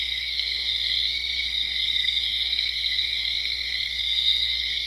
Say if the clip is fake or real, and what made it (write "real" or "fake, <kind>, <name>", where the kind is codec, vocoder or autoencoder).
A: fake, codec, SNAC